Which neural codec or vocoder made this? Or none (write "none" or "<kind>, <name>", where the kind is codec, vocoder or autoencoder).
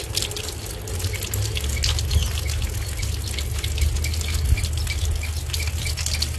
none